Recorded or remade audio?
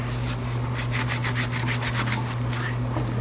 recorded